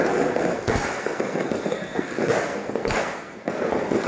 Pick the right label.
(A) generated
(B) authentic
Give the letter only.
A